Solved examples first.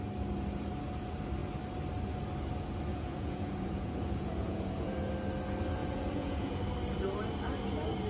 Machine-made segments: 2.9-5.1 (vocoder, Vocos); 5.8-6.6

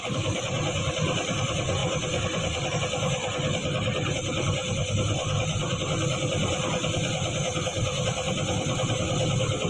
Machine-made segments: none

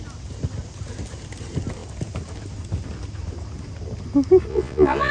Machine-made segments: 4.5-5.1 (vocoder, Vocos)